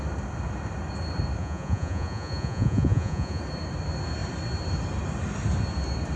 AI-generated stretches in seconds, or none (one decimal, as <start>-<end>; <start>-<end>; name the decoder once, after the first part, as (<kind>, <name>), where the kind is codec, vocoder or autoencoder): 1.4-3.4 (vocoder, Vocos)